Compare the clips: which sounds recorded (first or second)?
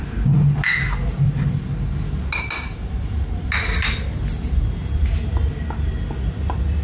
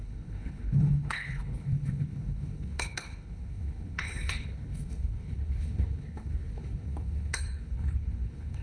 first